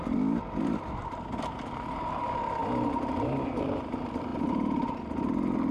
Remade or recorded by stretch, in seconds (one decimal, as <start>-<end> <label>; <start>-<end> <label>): 0.0-1.0 recorded; 1.0-1.6 remade; 1.6-5.7 recorded

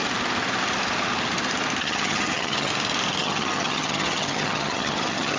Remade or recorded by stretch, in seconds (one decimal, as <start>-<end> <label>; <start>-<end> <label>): 0.0-1.8 recorded; 1.8-2.7 remade; 2.7-3.2 recorded; 3.2-5.4 remade

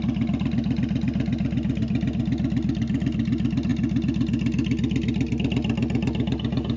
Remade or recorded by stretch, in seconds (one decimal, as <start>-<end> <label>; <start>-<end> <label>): 0.0-6.8 recorded

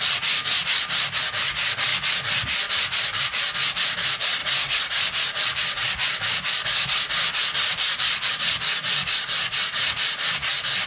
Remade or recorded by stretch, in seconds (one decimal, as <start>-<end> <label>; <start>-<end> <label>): 0.0-10.9 recorded

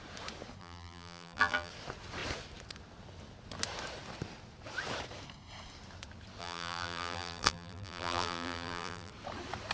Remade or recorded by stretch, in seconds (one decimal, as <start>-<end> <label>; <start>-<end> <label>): 0.0-0.6 recorded; 0.6-1.7 remade; 1.7-6.4 recorded; 6.4-9.1 remade; 9.1-9.7 recorded

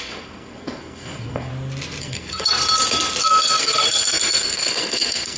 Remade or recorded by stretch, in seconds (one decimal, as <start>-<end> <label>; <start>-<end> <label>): 0.0-1.5 remade; 1.5-2.0 recorded; 2.0-2.6 remade; 2.6-3.2 recorded; 3.2-5.4 remade

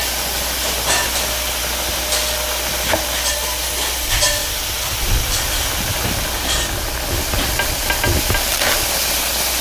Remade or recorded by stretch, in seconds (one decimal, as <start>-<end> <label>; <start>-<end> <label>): 0.0-9.6 recorded

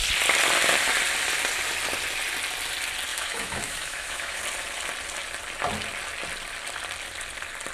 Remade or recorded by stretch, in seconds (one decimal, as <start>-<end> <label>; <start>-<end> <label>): 0.0-3.1 recorded; 3.1-4.4 remade; 4.4-7.7 recorded